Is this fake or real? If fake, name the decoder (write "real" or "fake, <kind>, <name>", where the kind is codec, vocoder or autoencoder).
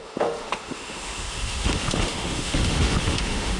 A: fake, autoencoder, DAC-VAE